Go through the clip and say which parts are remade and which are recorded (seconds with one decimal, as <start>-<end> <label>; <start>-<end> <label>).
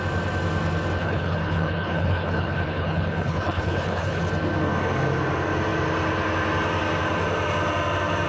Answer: 0.0-1.0 recorded; 1.0-4.2 remade; 4.2-8.3 recorded